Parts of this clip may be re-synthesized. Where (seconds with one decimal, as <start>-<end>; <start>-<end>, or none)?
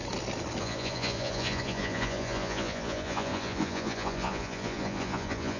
0.6-5.6